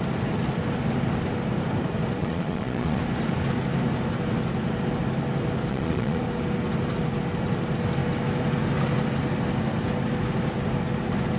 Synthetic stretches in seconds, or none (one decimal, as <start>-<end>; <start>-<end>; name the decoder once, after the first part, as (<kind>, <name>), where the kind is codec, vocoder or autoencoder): 2.2-3.0 (vocoder, Vocos); 5.7-6.2